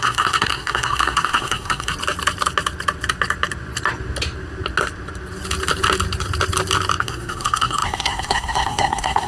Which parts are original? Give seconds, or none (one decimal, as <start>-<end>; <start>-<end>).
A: 1.9-7.0